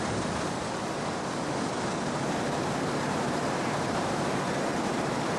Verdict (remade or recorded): recorded